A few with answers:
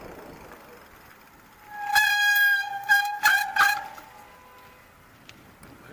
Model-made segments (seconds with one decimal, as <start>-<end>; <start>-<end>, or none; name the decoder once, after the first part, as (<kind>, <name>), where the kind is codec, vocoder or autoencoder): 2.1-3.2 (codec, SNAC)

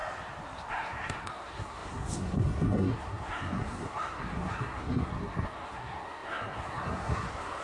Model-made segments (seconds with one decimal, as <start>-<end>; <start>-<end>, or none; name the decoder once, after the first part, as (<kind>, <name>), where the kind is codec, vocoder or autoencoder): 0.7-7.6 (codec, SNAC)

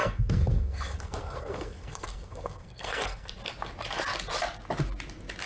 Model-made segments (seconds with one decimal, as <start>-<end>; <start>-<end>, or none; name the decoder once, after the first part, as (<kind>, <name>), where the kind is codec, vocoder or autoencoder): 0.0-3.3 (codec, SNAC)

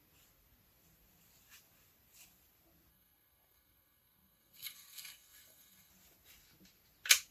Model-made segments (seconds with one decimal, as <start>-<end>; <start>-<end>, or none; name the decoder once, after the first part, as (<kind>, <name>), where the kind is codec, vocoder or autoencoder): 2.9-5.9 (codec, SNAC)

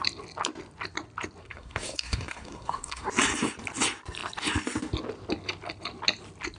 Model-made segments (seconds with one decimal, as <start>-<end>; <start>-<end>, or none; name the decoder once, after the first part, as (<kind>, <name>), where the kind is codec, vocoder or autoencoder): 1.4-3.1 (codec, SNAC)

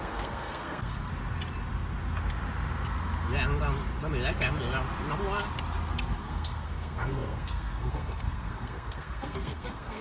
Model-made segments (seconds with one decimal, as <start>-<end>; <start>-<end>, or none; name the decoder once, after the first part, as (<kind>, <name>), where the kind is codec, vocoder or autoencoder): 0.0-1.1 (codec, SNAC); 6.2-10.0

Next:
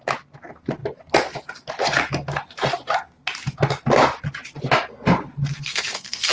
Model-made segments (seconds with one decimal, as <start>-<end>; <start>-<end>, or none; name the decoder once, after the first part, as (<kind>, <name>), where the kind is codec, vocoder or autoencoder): 5.5-6.3 (codec, SNAC)

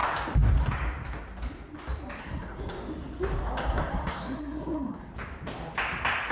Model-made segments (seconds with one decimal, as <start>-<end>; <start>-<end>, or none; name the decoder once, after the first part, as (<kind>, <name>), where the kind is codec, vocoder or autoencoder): 2.2-2.8 (codec, SNAC); 3.6-5.1